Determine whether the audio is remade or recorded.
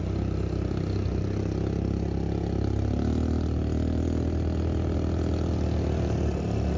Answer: recorded